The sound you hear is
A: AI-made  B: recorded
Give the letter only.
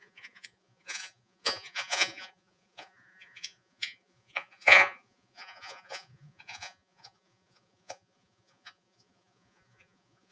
A